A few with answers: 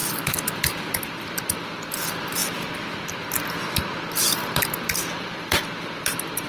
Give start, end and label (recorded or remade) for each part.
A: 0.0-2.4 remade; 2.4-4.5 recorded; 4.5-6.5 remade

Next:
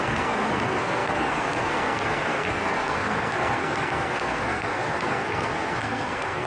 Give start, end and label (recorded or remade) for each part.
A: 0.0-6.5 remade

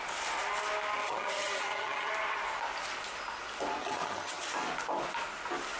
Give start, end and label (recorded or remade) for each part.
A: 0.0-1.0 recorded; 1.0-2.1 remade; 2.1-3.8 recorded; 3.8-4.5 remade; 4.5-5.8 recorded

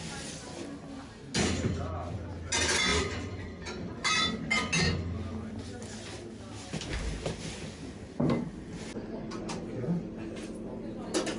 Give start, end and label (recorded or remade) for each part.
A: 0.0-2.9 recorded; 2.9-3.4 remade; 3.4-11.4 recorded

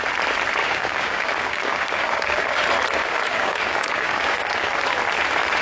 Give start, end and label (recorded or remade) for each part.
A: 0.0-0.6 recorded; 0.6-2.6 remade; 2.6-3.0 recorded; 3.0-4.7 remade; 4.7-5.6 recorded

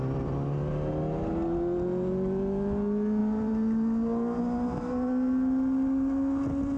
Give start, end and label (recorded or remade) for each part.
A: 0.0-6.8 recorded